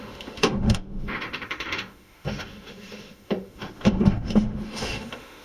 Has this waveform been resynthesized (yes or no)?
yes